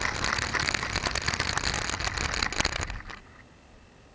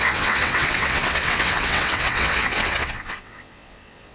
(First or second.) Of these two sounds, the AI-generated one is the second